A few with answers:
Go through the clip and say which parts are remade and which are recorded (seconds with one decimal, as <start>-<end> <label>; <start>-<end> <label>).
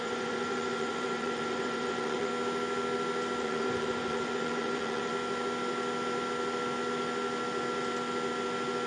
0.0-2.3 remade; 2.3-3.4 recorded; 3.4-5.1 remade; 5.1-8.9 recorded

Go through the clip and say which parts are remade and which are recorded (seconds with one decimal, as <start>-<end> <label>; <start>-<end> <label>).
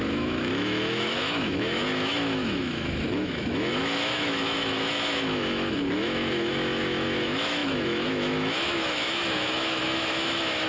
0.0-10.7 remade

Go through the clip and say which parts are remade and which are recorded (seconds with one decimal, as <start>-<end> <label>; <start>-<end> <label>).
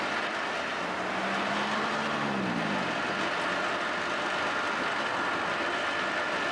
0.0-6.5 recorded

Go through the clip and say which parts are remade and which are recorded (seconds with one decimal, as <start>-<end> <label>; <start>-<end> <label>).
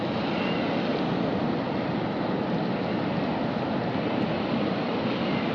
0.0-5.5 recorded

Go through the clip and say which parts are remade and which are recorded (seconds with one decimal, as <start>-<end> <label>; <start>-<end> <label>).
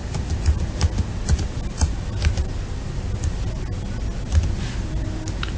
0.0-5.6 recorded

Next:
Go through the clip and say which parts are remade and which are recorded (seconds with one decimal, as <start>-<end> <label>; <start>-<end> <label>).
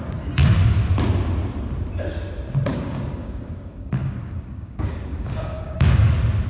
0.0-2.7 recorded; 2.7-6.1 remade; 6.1-6.5 recorded